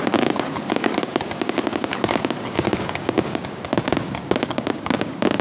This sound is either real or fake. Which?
fake